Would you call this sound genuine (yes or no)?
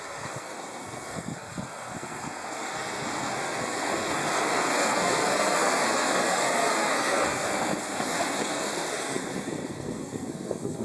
no